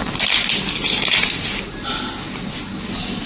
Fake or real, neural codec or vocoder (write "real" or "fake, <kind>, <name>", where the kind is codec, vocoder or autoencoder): real